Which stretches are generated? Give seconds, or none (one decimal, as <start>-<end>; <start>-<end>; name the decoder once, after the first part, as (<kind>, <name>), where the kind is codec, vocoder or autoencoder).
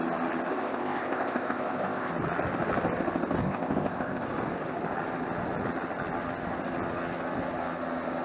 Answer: 0.5-2.1 (codec, ZipCodec); 3.4-4.2